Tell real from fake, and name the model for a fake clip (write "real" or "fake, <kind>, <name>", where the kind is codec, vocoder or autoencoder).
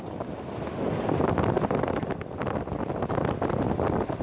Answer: real